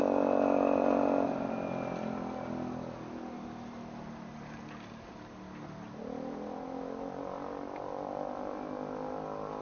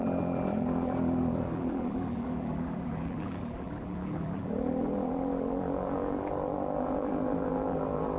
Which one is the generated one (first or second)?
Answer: second